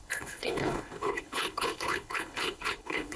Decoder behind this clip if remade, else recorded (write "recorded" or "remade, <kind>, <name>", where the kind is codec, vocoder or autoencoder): remade, codec, HILCodec